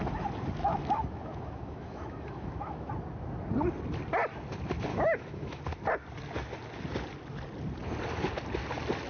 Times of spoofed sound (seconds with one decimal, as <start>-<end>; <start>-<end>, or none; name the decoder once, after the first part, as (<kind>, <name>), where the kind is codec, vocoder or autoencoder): 0.6-2.9 (autoencoder, DAC-VAE); 4.9-5.6